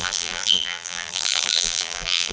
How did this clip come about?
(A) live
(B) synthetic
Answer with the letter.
B